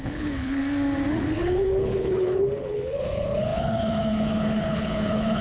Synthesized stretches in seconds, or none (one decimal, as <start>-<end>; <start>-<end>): 0.0-0.6; 1.2-5.4